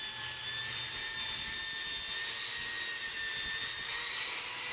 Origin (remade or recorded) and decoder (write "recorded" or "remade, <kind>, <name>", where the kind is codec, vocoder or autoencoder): recorded